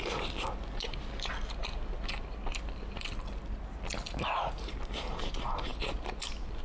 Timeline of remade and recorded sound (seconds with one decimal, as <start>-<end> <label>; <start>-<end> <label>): 0.0-6.6 recorded